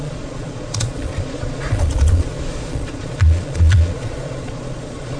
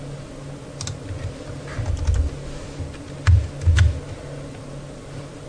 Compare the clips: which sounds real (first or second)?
second